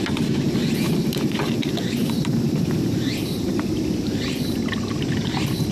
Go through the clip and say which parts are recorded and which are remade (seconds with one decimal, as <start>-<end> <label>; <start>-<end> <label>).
0.0-5.7 recorded